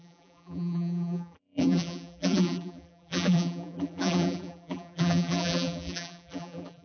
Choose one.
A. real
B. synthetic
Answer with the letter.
B